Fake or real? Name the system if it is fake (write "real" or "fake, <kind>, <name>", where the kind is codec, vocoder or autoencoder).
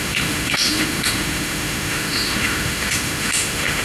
fake, autoencoder, DAC-VAE